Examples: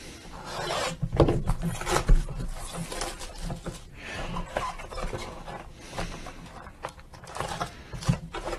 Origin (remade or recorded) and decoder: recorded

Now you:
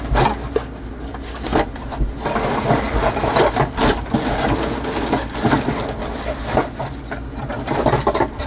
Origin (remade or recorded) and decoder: recorded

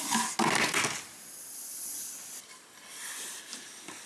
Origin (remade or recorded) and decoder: recorded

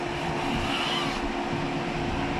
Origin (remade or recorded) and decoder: recorded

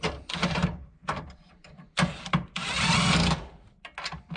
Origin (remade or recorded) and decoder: recorded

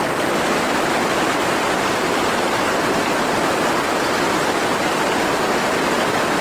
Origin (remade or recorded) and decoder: recorded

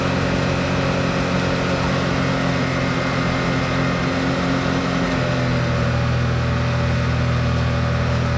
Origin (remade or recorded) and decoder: recorded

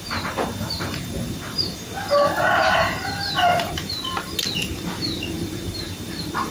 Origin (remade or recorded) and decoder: remade, vocoder, BigVGAN v2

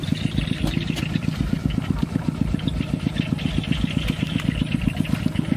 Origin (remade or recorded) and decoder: recorded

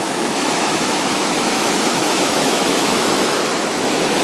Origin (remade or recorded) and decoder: remade, autoencoder, DAC-VAE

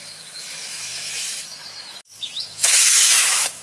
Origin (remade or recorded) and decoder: remade, autoencoder, DAC-VAE